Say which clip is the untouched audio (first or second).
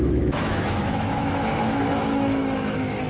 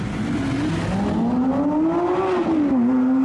second